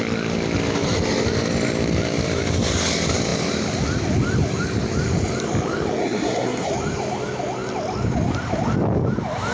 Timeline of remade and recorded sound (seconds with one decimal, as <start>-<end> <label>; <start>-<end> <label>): 0.0-6.0 recorded; 6.0-6.7 remade; 6.7-9.5 recorded

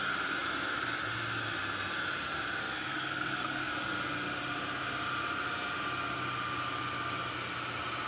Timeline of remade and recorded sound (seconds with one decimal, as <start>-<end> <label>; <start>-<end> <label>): 0.0-2.6 recorded; 2.6-3.7 remade; 3.7-8.1 recorded

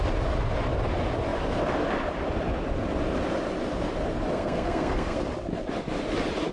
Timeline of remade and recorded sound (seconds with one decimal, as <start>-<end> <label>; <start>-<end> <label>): 0.0-4.3 recorded; 4.3-5.2 remade; 5.2-6.5 recorded